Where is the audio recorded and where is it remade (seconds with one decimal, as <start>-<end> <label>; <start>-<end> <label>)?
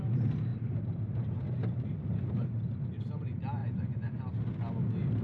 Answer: 0.0-3.6 recorded; 3.6-4.2 remade; 4.2-5.2 recorded